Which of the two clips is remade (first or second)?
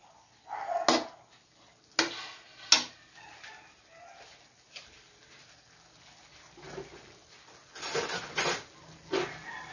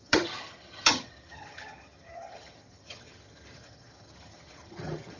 second